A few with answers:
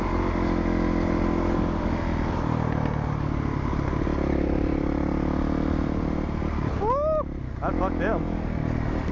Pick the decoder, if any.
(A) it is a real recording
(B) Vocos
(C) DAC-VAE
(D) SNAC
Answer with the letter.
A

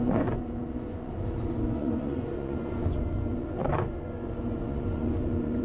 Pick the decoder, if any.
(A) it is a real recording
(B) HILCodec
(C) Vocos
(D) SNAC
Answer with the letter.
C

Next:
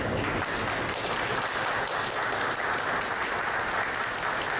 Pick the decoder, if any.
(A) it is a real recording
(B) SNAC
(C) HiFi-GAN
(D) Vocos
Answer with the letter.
A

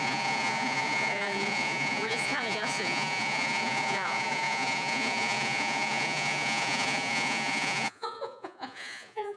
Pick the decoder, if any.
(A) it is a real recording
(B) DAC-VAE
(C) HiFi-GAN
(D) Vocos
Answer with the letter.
D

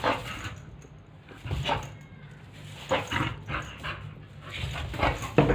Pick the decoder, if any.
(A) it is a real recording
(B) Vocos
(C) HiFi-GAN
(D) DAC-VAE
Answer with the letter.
A